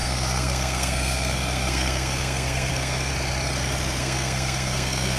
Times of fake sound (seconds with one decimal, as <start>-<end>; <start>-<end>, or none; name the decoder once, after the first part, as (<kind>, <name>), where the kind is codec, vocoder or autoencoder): 0.0-3.1 (codec, SNAC); 4.0-5.2

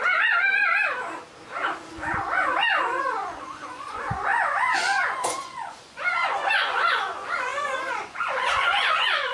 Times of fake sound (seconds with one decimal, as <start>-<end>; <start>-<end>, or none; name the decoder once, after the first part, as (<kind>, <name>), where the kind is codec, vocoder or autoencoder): 0.0-0.6 (vocoder, Vocos); 1.9-9.3

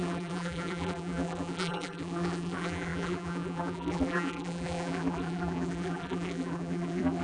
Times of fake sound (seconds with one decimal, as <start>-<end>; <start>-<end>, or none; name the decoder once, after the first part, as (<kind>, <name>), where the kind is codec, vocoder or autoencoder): 0.0-7.2 (vocoder, BigVGAN v2)

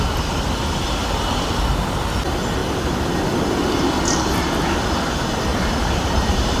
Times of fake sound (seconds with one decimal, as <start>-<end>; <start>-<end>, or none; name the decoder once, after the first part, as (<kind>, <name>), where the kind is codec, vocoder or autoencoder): 1.0-1.7 (vocoder, BigVGAN v2); 5.5-6.6

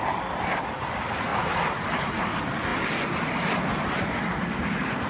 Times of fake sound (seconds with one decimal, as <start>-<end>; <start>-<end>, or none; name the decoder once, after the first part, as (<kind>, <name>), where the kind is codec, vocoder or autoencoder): none

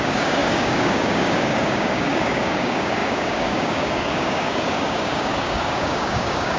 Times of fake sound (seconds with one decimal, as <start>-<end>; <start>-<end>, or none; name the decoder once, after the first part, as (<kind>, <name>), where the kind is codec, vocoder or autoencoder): 0.0-6.6 (codec, DAC)

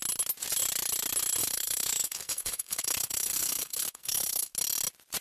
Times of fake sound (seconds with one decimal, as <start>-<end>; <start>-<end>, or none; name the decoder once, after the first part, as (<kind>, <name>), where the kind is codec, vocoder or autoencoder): 1.4-4.5 (codec, SNAC)